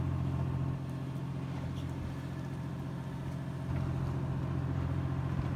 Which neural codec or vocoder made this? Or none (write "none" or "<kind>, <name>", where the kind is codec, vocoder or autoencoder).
none